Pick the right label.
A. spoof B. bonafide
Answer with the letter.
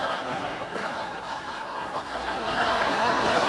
A